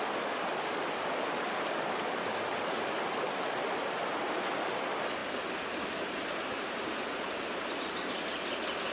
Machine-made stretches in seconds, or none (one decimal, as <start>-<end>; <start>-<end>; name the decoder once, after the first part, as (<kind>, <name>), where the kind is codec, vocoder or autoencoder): none